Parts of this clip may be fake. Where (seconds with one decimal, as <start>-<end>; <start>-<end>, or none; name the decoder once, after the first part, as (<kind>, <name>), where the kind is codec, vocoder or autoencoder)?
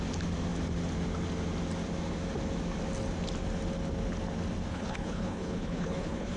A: 4.7-6.4 (codec, HILCodec)